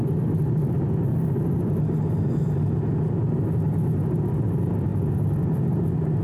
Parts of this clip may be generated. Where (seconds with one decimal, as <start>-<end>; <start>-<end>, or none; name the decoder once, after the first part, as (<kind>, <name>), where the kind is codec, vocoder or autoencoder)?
none